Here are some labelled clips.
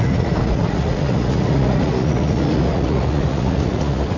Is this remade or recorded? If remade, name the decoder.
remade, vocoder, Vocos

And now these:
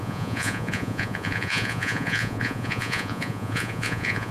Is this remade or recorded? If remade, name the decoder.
remade, vocoder, Vocos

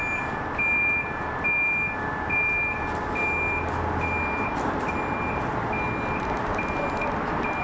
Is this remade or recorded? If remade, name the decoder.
recorded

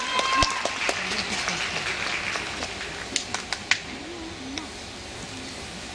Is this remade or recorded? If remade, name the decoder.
recorded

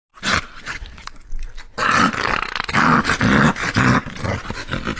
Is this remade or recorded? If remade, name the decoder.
recorded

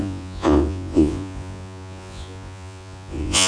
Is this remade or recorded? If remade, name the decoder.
remade, vocoder, Vocos